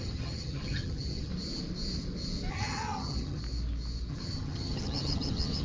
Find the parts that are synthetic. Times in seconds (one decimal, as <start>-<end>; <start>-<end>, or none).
0.0-1.3; 2.5-3.4; 4.1-5.6